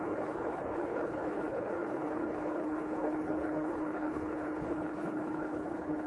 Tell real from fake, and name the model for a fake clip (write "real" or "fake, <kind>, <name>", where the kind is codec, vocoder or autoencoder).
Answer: fake, codec, HILCodec